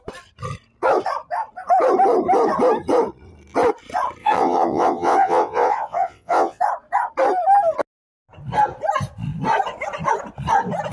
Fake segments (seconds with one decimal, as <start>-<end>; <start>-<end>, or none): 4.2-6.6